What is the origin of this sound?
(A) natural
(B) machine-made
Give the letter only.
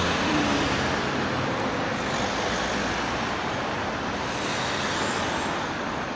A